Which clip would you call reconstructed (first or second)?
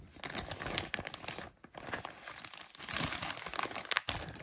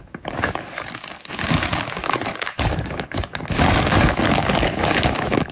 second